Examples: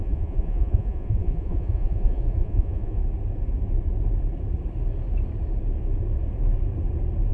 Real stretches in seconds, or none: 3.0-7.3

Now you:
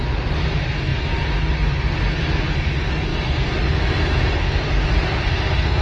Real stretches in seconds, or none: 0.0-5.8

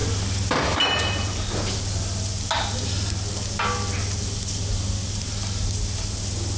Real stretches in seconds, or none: 0.0-6.6

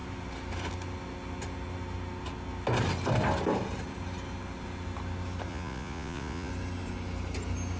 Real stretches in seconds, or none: 0.0-5.5; 6.5-7.8